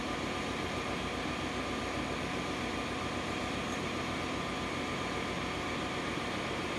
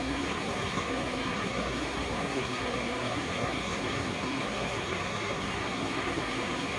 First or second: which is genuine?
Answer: first